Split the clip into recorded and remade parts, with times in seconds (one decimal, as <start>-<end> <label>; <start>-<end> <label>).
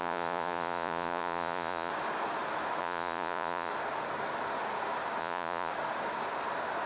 0.0-1.9 remade; 1.9-2.8 recorded; 2.8-3.7 remade; 3.7-5.2 recorded; 5.2-5.7 remade; 5.7-6.9 recorded